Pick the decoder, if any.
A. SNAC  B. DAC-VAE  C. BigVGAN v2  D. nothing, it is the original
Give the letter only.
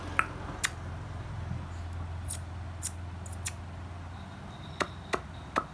D